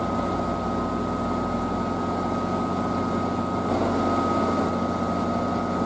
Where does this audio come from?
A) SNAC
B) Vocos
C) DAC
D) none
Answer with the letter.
D